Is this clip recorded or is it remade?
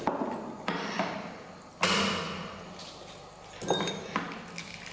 recorded